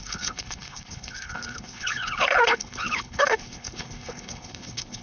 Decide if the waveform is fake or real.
fake